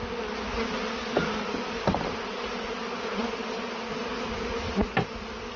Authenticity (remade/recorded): recorded